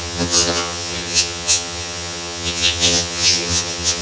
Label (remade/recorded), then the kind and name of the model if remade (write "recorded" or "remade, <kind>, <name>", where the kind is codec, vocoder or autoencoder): remade, vocoder, HiFi-GAN